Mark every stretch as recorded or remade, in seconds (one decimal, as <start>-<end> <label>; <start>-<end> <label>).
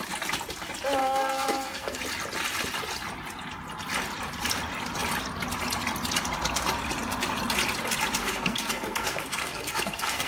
0.0-1.0 recorded; 1.0-2.0 remade; 2.0-8.2 recorded; 8.2-10.3 remade